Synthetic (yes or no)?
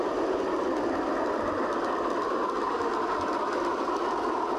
no